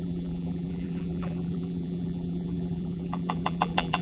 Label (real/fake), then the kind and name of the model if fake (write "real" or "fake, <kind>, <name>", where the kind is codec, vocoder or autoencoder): fake, vocoder, BigVGAN v2